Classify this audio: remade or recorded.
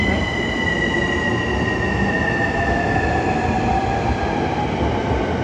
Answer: recorded